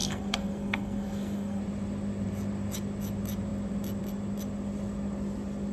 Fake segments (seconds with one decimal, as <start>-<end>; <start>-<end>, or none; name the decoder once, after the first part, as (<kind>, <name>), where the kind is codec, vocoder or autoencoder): 0.0-1.6 (codec, SNAC)